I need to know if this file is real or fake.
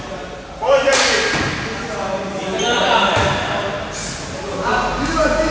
real